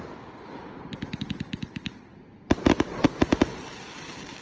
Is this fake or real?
real